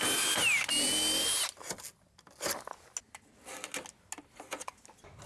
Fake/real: real